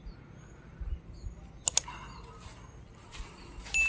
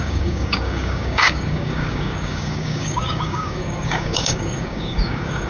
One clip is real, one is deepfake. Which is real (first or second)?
first